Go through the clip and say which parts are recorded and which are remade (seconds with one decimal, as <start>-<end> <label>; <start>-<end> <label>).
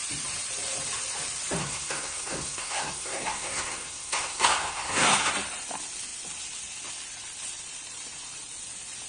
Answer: 0.0-1.6 recorded; 1.6-5.3 remade; 5.3-9.1 recorded